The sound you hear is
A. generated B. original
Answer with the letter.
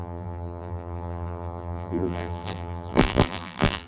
A